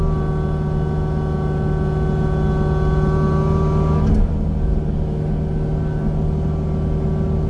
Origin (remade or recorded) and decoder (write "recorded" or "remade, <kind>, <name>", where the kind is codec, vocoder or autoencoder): recorded